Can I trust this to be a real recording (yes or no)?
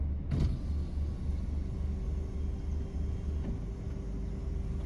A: yes